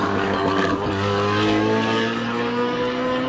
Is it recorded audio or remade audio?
remade